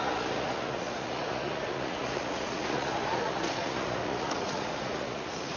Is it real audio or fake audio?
fake